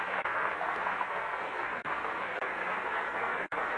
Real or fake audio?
fake